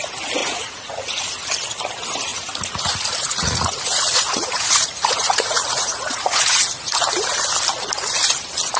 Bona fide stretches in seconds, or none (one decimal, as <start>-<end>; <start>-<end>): 0.0-0.4; 1.3-2.3; 7.0-8.8